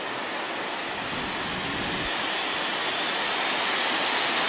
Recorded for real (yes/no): yes